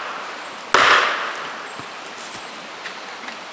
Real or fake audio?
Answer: real